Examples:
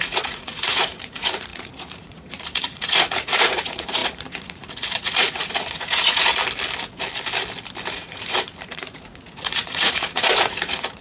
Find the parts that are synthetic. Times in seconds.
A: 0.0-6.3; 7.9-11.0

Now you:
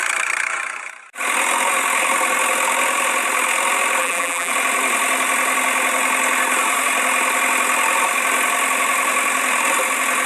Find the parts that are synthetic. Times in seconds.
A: 4.0-4.5